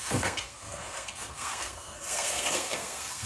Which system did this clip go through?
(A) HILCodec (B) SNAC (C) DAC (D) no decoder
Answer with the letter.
B